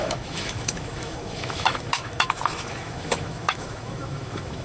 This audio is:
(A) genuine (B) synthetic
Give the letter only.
B